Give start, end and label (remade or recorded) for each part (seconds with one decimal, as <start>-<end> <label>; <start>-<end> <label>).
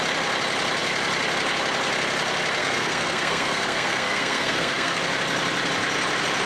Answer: 0.0-2.6 recorded; 2.6-5.0 remade; 5.0-6.5 recorded